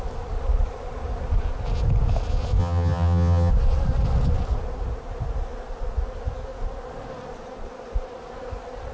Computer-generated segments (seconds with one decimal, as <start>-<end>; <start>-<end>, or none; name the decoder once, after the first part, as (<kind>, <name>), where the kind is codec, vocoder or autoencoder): 2.6-3.5 (vocoder, HiFi-GAN)